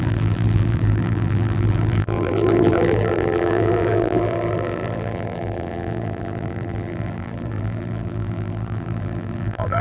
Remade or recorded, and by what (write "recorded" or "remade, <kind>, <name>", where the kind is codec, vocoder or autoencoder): remade, vocoder, BigVGAN v2